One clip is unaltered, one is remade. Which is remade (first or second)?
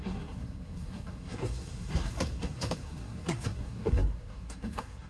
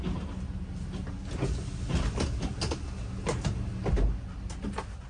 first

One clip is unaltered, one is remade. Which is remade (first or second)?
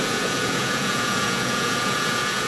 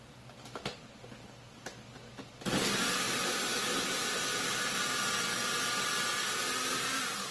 first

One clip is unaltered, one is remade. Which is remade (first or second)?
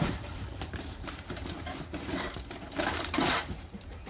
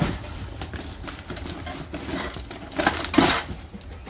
first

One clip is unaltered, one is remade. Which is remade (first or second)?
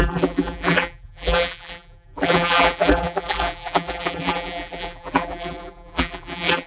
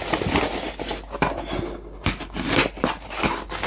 first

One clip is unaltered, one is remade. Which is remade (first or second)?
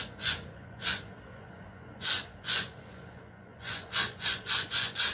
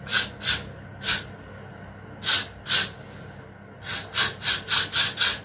first